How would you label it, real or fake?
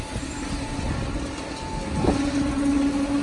real